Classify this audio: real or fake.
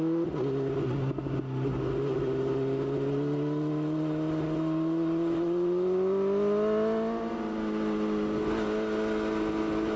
real